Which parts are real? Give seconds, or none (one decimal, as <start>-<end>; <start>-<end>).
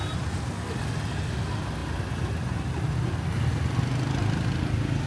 0.0-5.1